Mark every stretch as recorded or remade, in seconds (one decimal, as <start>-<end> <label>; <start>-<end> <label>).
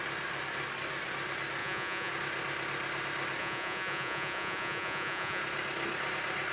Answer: 0.0-1.6 recorded; 1.6-2.1 remade; 2.1-3.4 recorded; 3.4-5.4 remade; 5.4-6.5 recorded